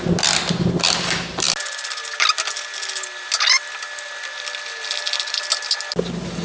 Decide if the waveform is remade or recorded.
recorded